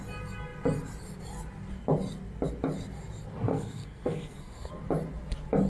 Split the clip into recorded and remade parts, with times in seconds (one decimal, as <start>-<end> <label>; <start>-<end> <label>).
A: 0.0-3.5 recorded; 3.5-4.7 remade; 4.7-5.7 recorded